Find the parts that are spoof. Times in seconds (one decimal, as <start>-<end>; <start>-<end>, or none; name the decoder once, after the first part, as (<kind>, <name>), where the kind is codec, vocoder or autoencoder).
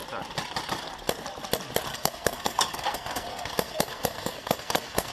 1.9-5.1 (codec, SNAC)